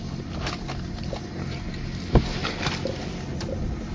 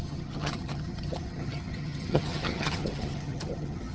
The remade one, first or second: second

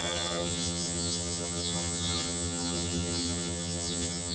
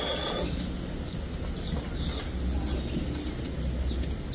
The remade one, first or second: first